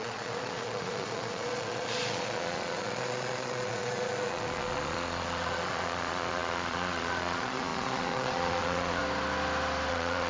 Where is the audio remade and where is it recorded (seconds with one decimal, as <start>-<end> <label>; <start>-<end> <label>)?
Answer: 0.0-9.0 remade; 9.0-9.9 recorded; 9.9-10.3 remade